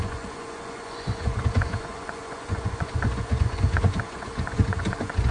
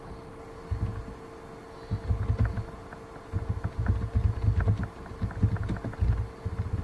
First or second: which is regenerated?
first